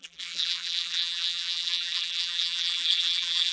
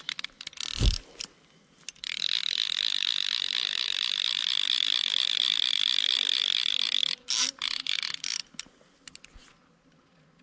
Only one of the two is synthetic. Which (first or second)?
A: first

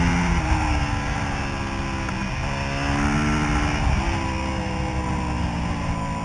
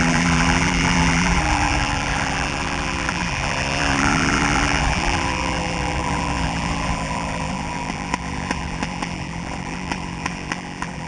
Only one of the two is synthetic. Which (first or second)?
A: second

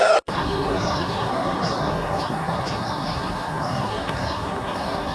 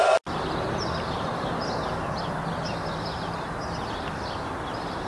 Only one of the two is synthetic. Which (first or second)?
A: first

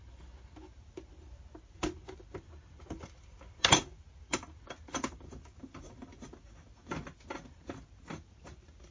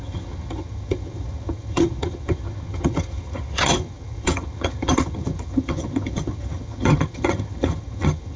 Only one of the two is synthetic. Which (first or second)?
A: second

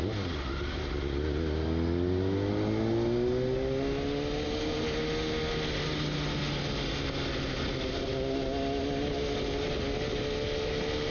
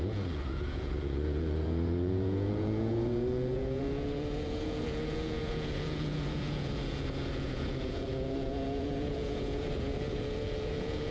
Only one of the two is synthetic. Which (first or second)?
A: second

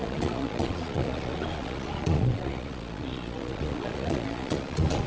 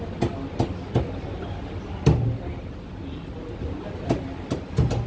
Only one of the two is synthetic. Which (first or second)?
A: first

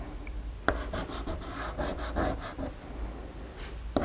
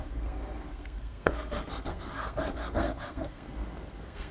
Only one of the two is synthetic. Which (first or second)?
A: second